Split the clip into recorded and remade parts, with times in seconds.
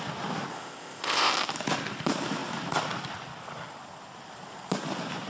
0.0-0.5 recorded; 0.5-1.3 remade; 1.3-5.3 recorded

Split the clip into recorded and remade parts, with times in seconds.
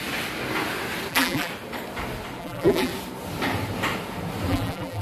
0.0-1.1 recorded; 1.1-1.5 remade; 1.5-2.4 recorded; 2.4-2.9 remade; 2.9-4.5 recorded; 4.5-5.0 remade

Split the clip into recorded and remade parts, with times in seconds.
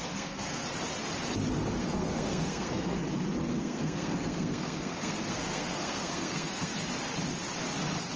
0.0-0.6 remade; 0.6-1.8 recorded; 1.8-3.0 remade; 3.0-3.6 recorded; 3.6-6.7 remade; 6.7-8.2 recorded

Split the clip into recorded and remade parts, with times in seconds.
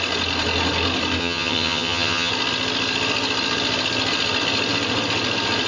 0.0-1.2 recorded; 1.2-2.3 remade; 2.3-5.7 recorded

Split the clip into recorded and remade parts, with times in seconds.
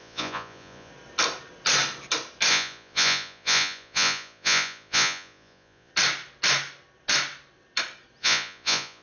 0.0-0.9 remade; 0.9-2.5 recorded; 2.5-5.9 remade; 5.9-8.2 recorded; 8.2-9.0 remade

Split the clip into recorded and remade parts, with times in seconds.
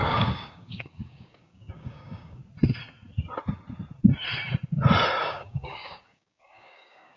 0.0-2.4 remade; 2.4-5.2 recorded; 5.2-7.2 remade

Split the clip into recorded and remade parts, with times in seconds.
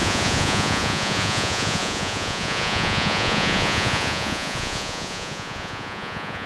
0.0-6.5 remade